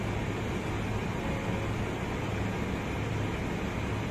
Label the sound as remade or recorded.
recorded